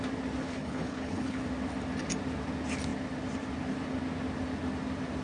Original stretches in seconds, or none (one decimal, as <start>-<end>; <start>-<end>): 0.0-0.4; 1.4-5.2